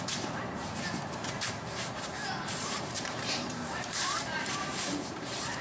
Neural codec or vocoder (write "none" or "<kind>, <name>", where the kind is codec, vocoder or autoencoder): vocoder, BigVGAN v2